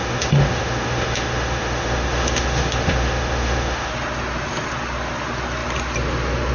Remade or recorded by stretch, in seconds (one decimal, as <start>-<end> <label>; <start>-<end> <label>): 0.0-3.9 remade; 3.9-6.5 recorded